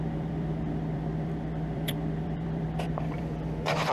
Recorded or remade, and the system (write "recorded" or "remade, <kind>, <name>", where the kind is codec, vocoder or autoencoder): remade, vocoder, BigVGAN v2